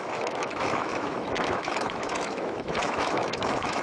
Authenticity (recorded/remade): remade